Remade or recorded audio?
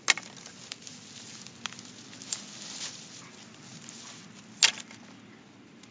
recorded